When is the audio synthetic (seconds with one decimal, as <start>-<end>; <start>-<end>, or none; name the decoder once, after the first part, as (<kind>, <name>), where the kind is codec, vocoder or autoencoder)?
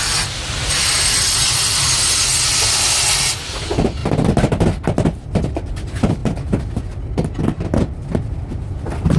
none